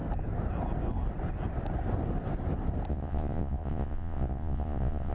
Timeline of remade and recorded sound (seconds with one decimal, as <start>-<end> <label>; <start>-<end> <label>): 0.0-2.9 recorded; 2.9-5.1 remade